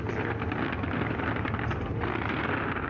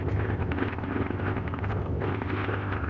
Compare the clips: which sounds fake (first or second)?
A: second